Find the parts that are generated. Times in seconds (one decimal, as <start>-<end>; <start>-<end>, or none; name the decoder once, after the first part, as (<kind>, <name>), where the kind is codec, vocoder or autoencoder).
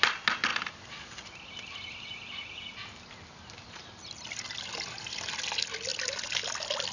none